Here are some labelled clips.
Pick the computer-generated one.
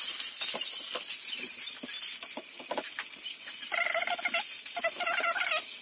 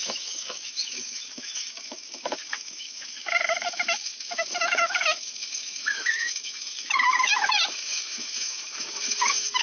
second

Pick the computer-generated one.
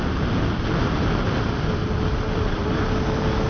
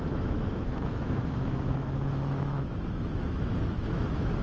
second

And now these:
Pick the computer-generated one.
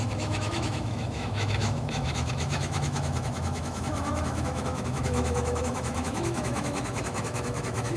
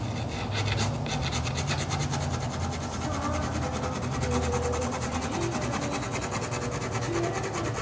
first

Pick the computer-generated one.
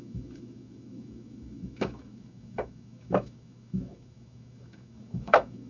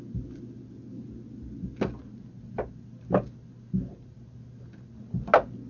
first